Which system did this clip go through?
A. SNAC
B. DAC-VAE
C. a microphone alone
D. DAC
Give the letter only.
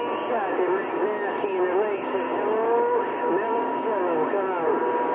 C